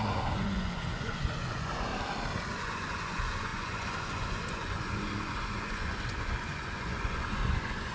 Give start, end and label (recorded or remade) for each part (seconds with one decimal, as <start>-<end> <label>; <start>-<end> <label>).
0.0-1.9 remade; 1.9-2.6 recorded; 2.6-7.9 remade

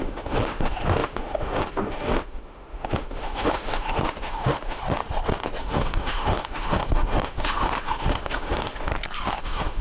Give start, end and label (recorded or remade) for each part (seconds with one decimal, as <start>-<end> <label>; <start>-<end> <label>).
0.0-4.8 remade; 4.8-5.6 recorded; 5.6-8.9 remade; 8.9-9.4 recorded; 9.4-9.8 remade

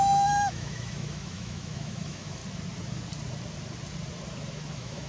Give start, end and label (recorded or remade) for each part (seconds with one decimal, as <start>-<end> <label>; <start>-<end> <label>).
0.0-2.4 remade; 2.4-4.5 recorded; 4.5-5.1 remade

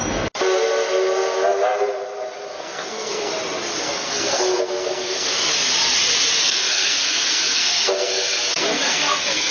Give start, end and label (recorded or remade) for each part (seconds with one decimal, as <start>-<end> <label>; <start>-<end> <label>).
0.0-2.5 recorded; 2.5-3.3 remade; 3.3-3.8 recorded; 3.8-5.5 remade; 5.5-6.4 recorded; 6.4-9.5 remade